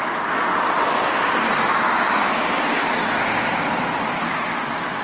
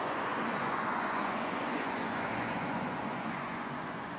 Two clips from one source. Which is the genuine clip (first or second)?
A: first